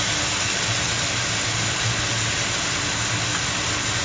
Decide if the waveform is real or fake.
real